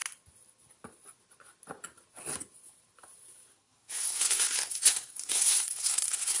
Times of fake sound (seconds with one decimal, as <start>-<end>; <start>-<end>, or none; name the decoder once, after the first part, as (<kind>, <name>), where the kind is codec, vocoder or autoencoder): 3.5-6.4 (codec, SNAC)